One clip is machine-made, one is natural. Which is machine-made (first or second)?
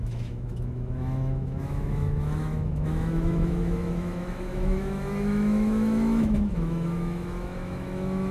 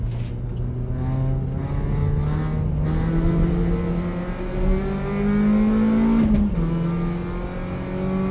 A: first